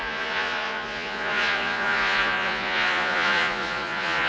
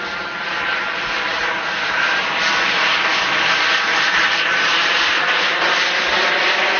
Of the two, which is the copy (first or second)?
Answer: first